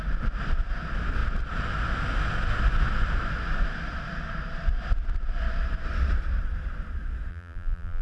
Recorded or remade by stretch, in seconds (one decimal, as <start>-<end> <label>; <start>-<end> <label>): 0.0-7.3 recorded; 7.3-8.0 remade